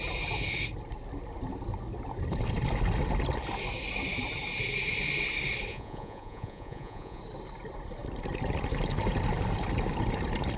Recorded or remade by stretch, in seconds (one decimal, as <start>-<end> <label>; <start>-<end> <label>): 0.0-5.7 recorded; 5.7-7.2 remade; 7.2-10.6 recorded